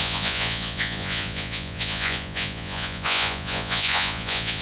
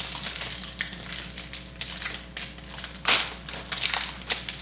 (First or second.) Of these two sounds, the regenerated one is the first